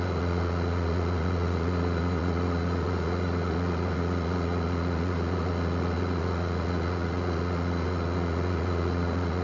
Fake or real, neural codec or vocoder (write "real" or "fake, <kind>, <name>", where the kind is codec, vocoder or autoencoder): fake, vocoder, Vocos